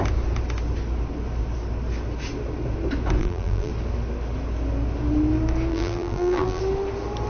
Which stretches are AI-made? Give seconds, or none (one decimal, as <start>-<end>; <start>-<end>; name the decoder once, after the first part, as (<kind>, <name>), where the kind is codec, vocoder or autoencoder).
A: 3.2-3.7 (vocoder, BigVGAN v2); 5.7-6.6